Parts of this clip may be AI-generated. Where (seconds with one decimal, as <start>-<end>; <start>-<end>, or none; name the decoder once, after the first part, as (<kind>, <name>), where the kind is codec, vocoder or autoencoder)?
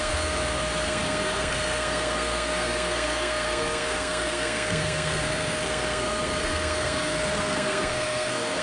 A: 0.0-8.6 (codec, SNAC)